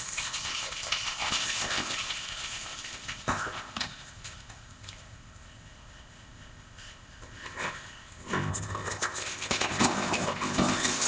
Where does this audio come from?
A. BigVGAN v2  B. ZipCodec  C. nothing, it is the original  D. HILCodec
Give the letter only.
B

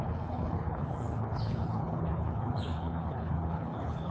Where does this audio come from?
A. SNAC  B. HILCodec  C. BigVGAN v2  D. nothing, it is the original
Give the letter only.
B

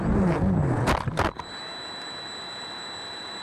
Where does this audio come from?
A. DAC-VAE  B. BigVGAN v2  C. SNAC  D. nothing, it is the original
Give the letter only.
D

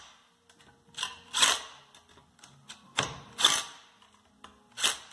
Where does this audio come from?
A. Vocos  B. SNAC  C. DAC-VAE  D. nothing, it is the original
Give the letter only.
D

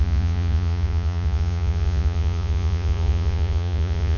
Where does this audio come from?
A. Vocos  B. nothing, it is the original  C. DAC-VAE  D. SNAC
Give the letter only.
A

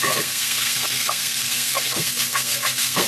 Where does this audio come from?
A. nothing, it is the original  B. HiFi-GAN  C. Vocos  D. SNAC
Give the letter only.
D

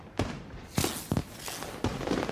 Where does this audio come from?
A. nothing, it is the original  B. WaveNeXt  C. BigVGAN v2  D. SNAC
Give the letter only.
A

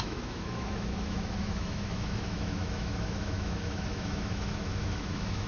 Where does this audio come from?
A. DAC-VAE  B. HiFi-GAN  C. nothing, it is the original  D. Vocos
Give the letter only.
A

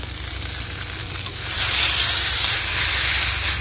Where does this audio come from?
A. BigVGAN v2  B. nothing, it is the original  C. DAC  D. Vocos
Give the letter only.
B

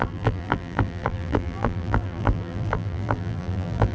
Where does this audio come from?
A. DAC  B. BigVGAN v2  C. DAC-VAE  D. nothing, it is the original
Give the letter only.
B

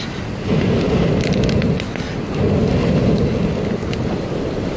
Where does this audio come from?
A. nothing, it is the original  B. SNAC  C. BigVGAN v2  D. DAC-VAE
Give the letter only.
A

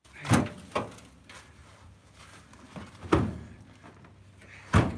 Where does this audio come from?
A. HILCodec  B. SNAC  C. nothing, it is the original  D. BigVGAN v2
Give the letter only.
C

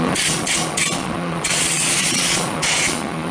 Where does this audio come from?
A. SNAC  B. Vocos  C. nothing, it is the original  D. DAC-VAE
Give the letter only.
B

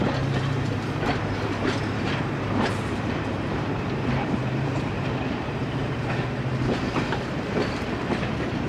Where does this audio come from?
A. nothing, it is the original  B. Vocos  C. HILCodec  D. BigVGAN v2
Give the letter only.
D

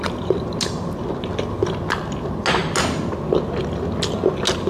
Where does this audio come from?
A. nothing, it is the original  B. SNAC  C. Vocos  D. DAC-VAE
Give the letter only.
A